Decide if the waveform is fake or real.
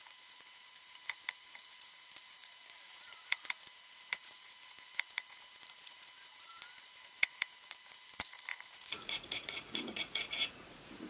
fake